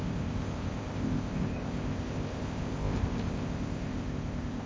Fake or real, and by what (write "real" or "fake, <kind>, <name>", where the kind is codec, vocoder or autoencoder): fake, codec, ZipCodec